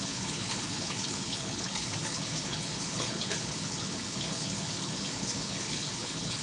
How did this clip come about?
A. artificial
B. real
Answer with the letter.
A